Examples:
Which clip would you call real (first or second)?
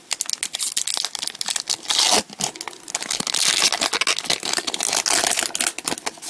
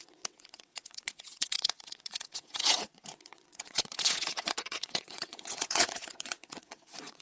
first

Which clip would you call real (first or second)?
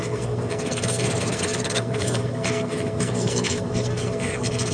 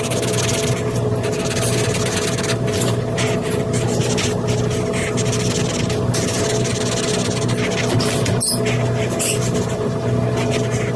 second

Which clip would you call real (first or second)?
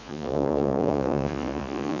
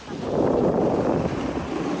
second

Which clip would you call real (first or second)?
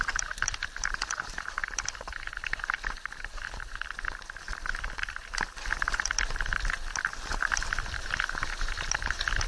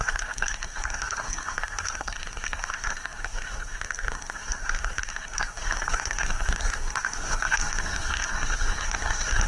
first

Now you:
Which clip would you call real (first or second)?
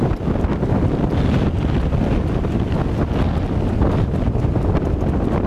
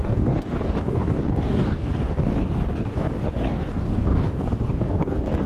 first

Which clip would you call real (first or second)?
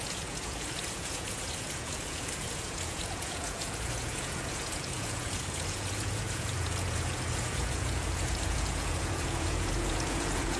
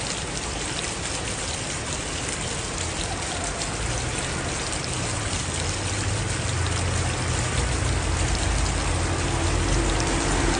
second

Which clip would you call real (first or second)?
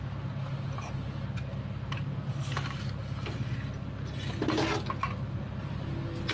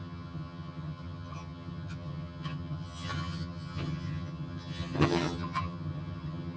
first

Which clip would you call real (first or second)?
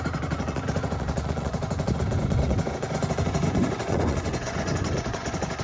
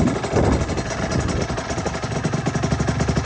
second